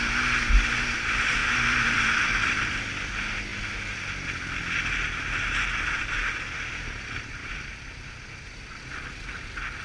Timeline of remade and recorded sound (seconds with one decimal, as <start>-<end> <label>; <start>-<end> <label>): 0.0-1.4 recorded; 1.4-3.1 remade; 3.1-3.5 recorded; 3.5-4.6 remade; 4.6-7.4 recorded; 7.4-8.5 remade; 8.5-9.8 recorded